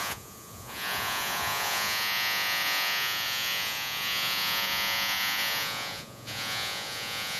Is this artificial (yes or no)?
yes